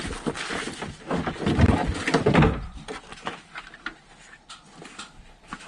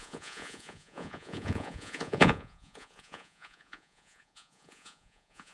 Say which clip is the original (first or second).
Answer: first